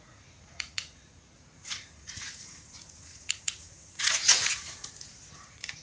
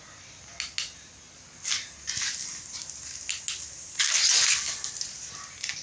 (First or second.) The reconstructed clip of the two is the first